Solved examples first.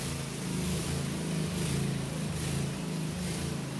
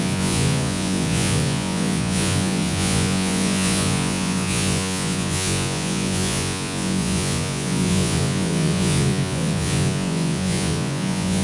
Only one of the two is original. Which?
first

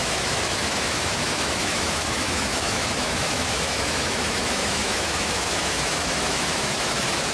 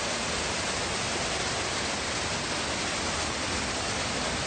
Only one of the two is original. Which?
second